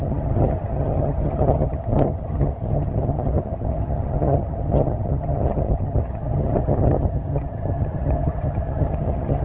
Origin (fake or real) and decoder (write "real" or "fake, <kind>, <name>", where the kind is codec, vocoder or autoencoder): fake, vocoder, HiFi-GAN